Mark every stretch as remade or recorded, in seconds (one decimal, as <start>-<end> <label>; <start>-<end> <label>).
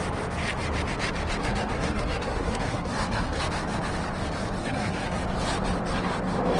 0.0-1.4 recorded; 1.4-3.4 remade; 3.4-4.6 recorded; 4.6-5.2 remade; 5.2-6.6 recorded